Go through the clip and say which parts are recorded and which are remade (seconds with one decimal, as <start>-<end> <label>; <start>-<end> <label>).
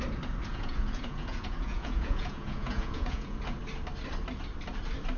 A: 0.0-0.5 recorded; 0.5-3.6 remade; 3.6-5.2 recorded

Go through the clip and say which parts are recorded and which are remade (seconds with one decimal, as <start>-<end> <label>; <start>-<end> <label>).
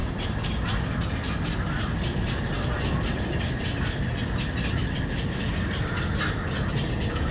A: 0.0-7.3 recorded